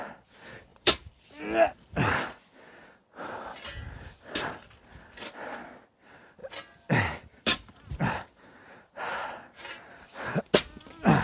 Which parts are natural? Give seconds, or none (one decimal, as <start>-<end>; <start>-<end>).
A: 0.0-0.7; 1.2-7.5; 10.4-11.2